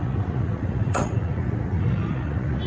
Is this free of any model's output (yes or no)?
no